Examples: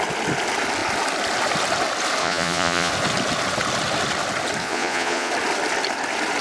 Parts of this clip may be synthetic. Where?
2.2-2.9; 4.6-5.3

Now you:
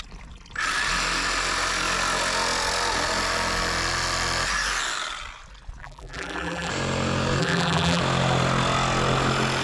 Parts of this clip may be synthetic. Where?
5.8-6.7; 7.4-8.0